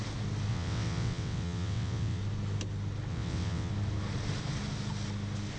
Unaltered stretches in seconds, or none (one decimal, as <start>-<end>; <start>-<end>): 0.0-0.5; 2.2-3.1; 3.7-5.6